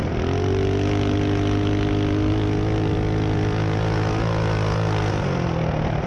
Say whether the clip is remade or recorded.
recorded